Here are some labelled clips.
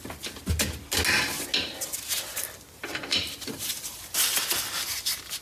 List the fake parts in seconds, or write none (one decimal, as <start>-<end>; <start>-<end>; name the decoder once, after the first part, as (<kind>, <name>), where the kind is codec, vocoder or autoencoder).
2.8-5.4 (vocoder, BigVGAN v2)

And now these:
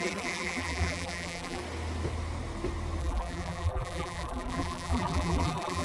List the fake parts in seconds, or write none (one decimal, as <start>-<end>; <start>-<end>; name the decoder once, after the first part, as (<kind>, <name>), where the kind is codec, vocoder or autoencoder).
0.0-1.6 (vocoder, BigVGAN v2); 3.0-5.8

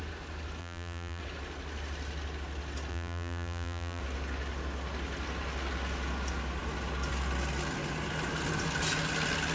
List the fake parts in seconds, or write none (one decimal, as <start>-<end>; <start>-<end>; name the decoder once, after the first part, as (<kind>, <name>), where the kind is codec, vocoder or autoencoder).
0.6-1.2 (vocoder, BigVGAN v2); 2.9-4.0

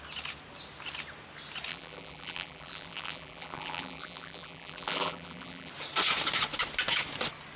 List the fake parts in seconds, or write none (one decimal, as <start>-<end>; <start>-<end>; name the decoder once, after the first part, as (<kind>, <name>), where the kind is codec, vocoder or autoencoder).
1.7-5.7 (vocoder, BigVGAN v2)

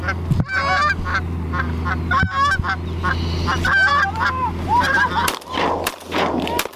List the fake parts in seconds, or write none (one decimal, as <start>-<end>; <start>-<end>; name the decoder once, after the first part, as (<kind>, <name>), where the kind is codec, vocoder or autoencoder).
3.9-5.1 (vocoder, BigVGAN v2)

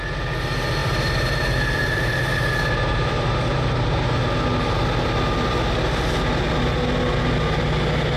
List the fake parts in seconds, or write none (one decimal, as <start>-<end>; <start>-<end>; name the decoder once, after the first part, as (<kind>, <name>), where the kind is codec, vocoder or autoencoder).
0.8-4.3 (vocoder, BigVGAN v2)

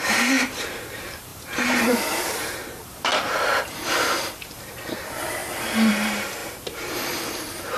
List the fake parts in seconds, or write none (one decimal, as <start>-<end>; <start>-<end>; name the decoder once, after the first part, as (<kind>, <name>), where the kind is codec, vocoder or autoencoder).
0.0-5.4 (vocoder, BigVGAN v2); 5.9-7.8

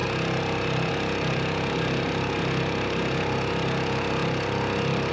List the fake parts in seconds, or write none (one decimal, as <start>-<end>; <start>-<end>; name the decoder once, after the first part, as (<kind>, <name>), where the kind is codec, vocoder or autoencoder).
none